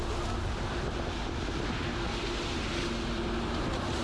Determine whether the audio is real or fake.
real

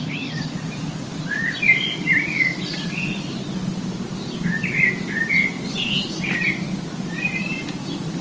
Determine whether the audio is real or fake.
real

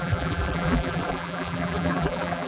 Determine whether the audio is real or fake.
fake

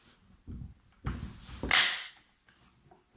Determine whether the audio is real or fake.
real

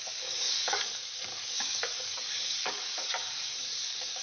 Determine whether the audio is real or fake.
fake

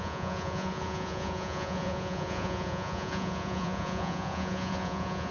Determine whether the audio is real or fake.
fake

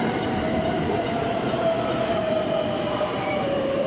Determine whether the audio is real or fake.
fake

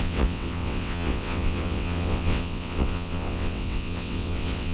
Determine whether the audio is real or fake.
fake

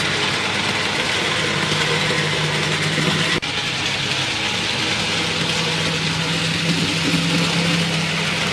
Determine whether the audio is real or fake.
real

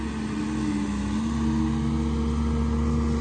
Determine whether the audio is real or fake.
real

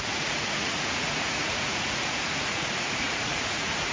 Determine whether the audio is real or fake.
fake